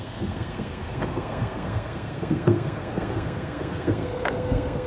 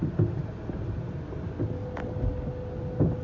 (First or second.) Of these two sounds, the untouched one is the second